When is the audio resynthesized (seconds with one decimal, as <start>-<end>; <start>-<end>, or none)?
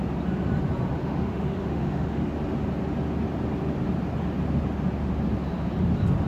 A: 1.0-2.3